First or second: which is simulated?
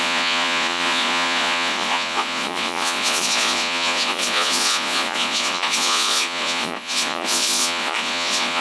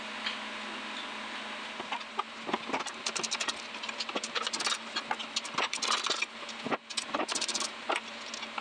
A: first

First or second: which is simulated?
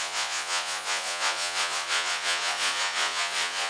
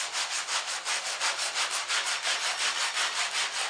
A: first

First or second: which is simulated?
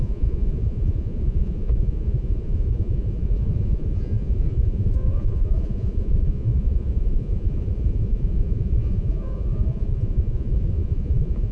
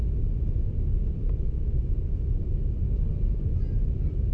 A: first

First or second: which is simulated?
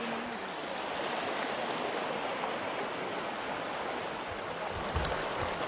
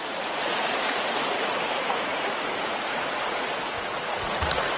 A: second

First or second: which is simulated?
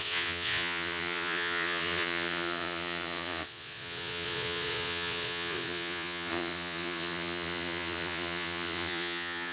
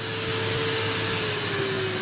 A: first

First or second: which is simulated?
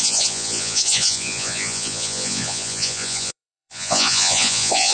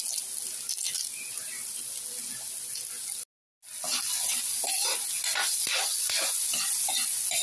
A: first